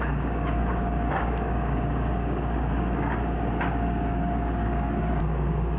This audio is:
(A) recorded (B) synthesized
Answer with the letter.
B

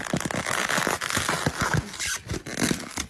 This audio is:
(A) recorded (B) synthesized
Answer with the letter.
A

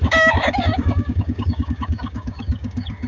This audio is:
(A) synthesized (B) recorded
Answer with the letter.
A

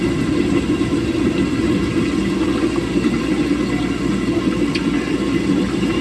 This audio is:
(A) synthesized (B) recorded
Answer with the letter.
B